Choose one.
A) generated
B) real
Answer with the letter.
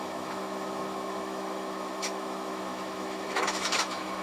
A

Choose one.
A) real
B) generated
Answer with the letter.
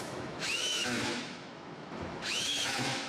B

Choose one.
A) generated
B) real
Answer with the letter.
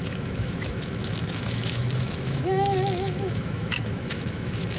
A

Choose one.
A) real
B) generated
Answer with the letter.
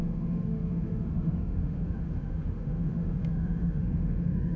B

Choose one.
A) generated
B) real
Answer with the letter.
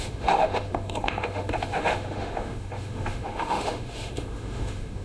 A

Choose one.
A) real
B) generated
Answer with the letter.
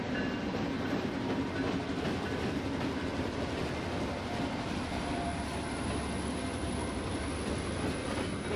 A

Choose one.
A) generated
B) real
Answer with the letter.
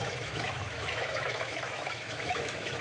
A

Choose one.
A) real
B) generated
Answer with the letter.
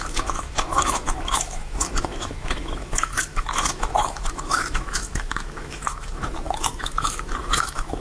B